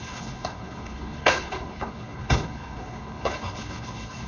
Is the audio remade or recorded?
remade